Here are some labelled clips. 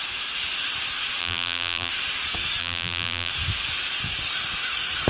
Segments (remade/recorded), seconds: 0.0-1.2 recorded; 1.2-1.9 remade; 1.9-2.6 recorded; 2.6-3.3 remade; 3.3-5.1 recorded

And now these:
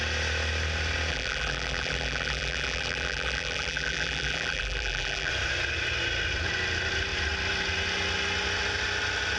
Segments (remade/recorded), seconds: 0.0-1.1 recorded; 1.1-5.3 remade; 5.3-9.4 recorded

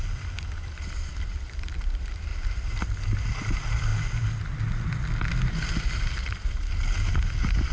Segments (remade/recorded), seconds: 0.0-2.3 remade; 2.3-3.4 recorded; 3.4-3.9 remade; 3.9-7.1 recorded; 7.1-7.7 remade